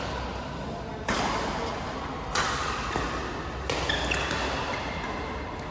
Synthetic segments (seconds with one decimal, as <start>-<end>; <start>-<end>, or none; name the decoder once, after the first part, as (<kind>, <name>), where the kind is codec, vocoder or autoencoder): none